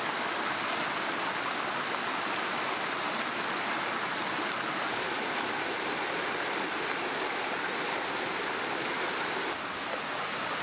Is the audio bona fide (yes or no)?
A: yes